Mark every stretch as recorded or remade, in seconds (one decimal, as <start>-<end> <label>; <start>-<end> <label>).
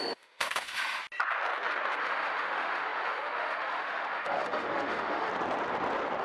0.0-1.0 remade; 1.0-2.0 recorded; 2.0-5.3 remade; 5.3-6.2 recorded